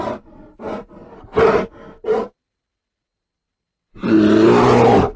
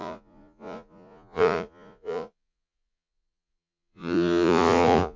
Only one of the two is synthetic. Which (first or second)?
second